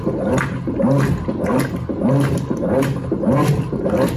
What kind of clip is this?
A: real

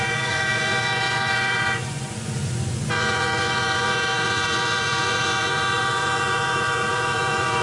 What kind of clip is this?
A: fake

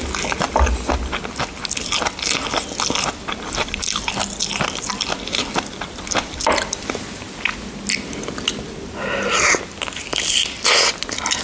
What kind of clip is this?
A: real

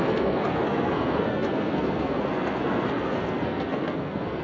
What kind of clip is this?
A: fake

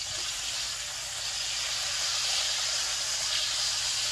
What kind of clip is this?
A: real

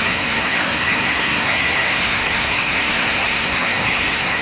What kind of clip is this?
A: fake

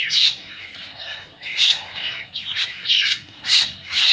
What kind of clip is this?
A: fake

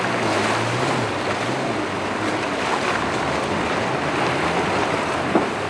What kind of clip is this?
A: real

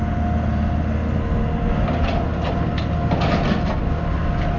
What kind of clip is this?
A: real